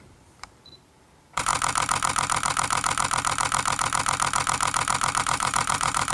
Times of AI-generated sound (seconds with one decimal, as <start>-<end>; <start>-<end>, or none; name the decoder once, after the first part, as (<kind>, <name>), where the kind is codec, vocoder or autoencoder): 0.0-1.5 (vocoder, BigVGAN v2); 5.2-6.1

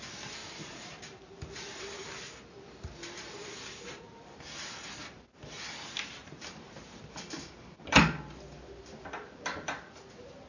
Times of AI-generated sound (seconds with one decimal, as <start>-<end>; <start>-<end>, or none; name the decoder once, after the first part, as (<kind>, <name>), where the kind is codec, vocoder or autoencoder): 0.4-4.4 (vocoder, BigVGAN v2); 6.2-7.2

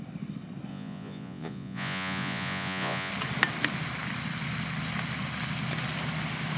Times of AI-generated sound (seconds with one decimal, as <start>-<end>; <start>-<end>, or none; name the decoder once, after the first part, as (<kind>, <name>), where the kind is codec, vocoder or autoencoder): 0.7-3.1 (vocoder, Vocos)

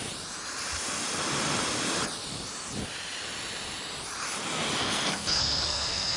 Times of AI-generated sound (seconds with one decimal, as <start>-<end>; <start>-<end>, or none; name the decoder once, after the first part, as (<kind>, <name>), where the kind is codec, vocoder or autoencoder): 4.8-6.2 (codec, SNAC)

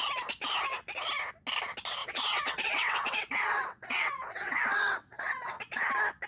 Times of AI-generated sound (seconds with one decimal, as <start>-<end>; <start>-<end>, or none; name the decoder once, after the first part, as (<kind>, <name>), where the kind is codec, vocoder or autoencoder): 2.0-5.8 (vocoder, WaveNeXt)

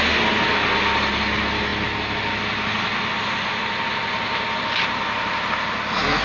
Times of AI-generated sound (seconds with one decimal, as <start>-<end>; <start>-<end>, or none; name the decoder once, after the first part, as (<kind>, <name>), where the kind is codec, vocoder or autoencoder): none

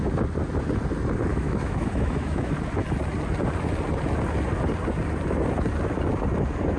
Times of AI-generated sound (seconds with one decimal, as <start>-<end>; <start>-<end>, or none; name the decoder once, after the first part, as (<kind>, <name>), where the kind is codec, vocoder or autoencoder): 1.3-2.5 (autoencoder, DAC-VAE)